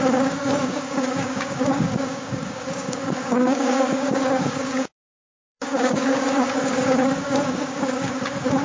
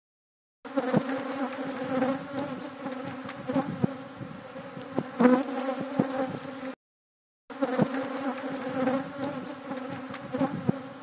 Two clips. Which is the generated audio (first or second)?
first